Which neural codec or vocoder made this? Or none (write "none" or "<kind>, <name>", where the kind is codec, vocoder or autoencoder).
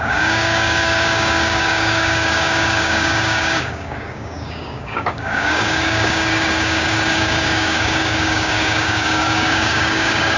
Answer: codec, DAC